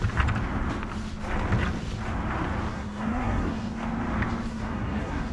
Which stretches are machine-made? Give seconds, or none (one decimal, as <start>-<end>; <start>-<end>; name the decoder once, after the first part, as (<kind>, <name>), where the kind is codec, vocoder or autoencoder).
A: 2.7-3.7 (codec, SNAC); 4.5-5.3